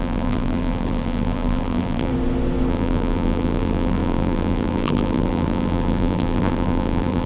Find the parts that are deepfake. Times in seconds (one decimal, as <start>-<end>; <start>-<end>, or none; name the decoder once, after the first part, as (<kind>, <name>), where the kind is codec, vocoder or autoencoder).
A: 0.0-2.1 (vocoder, BigVGAN v2); 2.7-7.3